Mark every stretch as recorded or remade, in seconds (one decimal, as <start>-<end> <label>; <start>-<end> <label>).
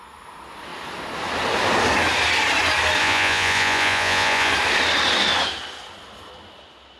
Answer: 0.0-3.0 recorded; 3.0-4.5 remade; 4.5-7.0 recorded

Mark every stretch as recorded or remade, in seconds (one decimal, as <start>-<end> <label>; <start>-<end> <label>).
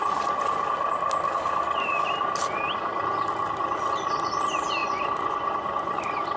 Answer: 0.0-4.8 recorded; 4.8-6.0 remade; 6.0-6.4 recorded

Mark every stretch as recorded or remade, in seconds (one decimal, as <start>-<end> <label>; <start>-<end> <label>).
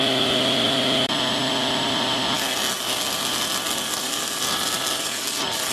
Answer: 0.0-5.7 recorded